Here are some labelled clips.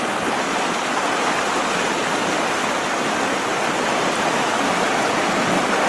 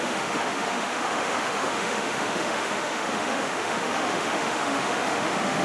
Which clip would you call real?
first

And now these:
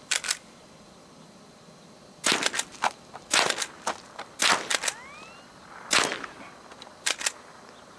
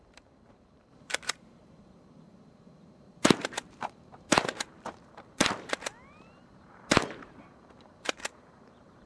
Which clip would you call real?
first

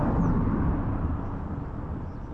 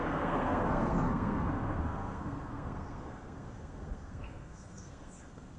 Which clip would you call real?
first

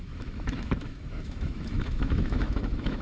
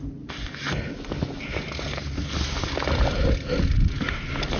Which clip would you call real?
second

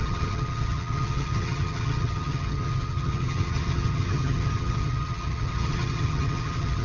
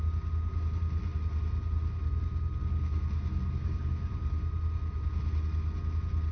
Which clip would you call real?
second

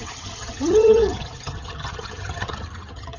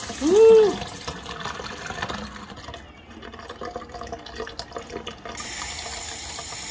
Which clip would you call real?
second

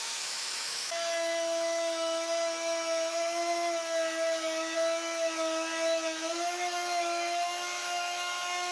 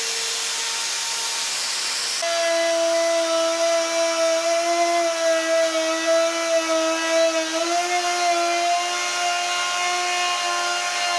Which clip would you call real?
second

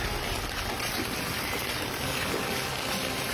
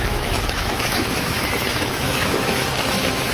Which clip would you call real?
first